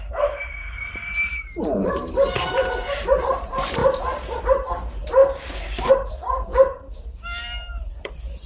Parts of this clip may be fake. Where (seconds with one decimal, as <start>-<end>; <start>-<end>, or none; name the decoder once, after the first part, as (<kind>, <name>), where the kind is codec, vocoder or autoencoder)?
0.0-5.2 (vocoder, BigVGAN v2); 5.9-6.5; 7.8-8.5

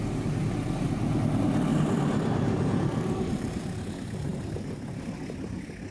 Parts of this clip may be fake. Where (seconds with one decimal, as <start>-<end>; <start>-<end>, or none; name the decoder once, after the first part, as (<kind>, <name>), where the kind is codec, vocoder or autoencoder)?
1.7-3.6 (vocoder, BigVGAN v2)

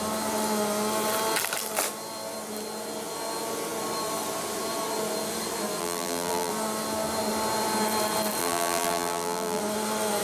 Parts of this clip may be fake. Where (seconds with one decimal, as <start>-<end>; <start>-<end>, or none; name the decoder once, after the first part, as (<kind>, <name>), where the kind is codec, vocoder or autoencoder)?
5.8-6.5 (vocoder, BigVGAN v2); 8.4-9.6

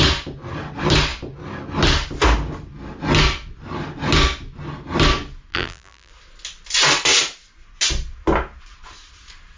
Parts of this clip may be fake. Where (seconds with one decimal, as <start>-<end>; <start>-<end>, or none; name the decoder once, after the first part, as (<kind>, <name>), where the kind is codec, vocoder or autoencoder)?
5.5-6.1 (vocoder, BigVGAN v2)

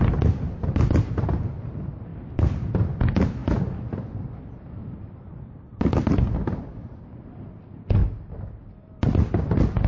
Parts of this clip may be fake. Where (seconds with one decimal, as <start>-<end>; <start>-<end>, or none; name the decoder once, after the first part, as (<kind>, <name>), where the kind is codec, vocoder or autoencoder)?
3.4-4.2 (vocoder, BigVGAN v2); 4.8-6.8; 8.0-9.3

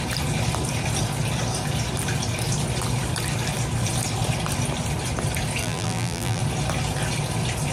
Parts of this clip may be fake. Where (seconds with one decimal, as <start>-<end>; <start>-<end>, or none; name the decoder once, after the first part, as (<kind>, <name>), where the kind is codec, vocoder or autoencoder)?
5.6-6.4 (vocoder, BigVGAN v2)

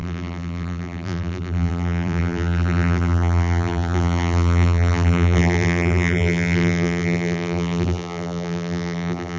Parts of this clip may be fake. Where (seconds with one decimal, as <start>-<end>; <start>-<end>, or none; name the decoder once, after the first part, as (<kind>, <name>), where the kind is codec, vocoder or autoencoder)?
0.0-9.4 (vocoder, BigVGAN v2)